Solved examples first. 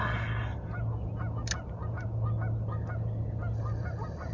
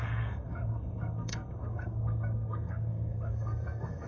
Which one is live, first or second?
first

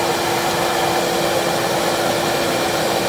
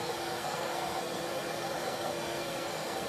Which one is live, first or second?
first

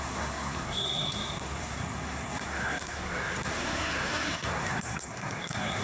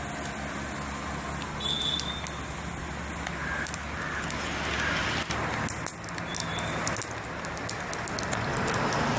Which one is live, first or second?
second